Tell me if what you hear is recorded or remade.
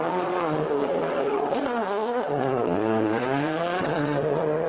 remade